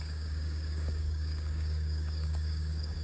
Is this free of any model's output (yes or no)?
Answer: no